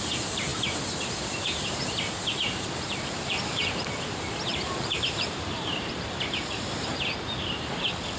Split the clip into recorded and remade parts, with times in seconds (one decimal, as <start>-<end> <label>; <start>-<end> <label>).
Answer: 0.0-4.5 recorded; 4.5-7.0 remade; 7.0-8.2 recorded